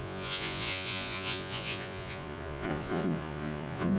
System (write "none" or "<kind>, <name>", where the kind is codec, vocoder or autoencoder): vocoder, Vocos